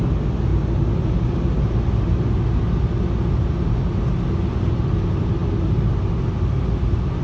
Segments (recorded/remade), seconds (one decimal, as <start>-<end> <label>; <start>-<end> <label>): 0.0-7.2 recorded